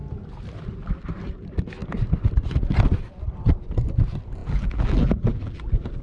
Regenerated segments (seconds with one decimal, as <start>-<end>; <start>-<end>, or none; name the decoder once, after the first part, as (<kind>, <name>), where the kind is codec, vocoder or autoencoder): 4.4-6.0 (vocoder, BigVGAN v2)